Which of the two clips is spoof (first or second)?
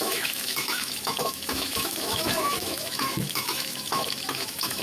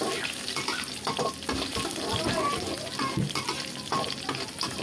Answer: first